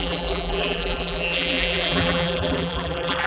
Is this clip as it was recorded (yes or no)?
no